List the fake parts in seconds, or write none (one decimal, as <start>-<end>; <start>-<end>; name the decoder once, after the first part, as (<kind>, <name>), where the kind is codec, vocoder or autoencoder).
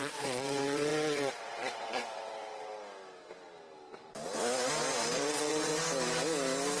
0.0-2.7 (vocoder, WaveNeXt); 5.1-5.7